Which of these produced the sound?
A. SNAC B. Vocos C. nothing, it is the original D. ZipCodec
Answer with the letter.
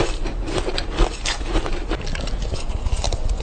C